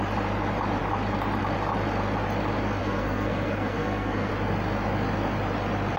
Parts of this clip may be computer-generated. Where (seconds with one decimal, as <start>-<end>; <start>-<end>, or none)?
2.8-4.3